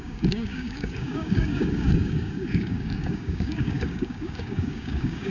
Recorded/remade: remade